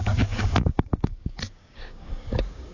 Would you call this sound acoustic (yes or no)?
no